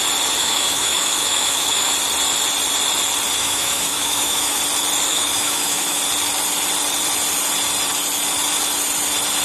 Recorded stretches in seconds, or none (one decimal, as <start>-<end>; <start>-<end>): 0.0-0.4; 1.9-3.4; 4.6-5.1; 6.0-9.4